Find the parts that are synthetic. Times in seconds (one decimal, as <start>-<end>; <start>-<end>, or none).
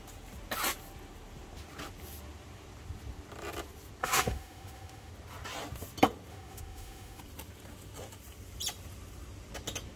4.0-5.1; 6.3-7.2